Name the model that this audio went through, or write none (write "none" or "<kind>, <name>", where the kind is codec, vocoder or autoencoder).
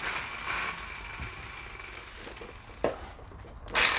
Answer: none